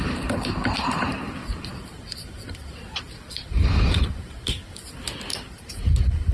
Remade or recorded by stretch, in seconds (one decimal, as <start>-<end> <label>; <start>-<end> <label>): 0.0-6.3 remade